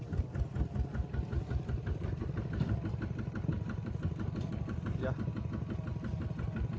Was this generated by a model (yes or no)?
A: no